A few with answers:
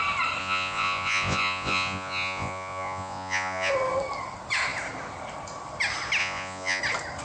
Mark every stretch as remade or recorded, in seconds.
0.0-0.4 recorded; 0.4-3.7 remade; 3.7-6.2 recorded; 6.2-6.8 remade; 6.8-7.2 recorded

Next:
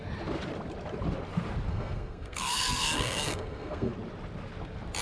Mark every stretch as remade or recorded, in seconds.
0.0-1.7 recorded; 1.7-3.9 remade; 3.9-5.0 recorded